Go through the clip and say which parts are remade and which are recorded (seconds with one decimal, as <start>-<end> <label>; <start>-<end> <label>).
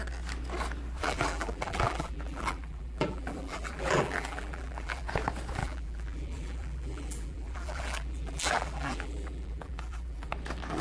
0.0-1.0 recorded; 1.0-5.1 remade; 5.1-5.6 recorded; 5.6-10.3 remade; 10.3-10.8 recorded